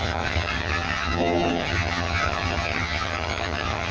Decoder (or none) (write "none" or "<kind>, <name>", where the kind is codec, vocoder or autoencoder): vocoder, HiFi-GAN